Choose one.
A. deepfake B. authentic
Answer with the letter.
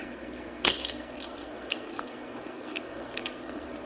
A